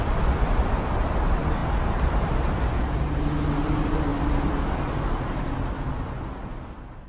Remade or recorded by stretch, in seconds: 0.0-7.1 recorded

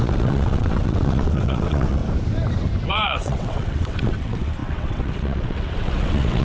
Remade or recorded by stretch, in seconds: 0.0-2.0 remade; 2.0-2.9 recorded; 2.9-6.4 remade

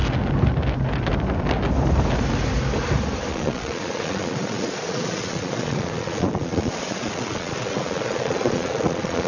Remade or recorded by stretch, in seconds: 0.0-3.3 recorded; 3.3-9.3 remade